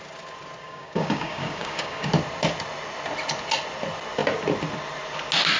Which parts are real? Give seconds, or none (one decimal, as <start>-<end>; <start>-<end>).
0.0-0.6; 2.1-5.6